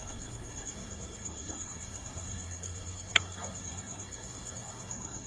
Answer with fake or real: fake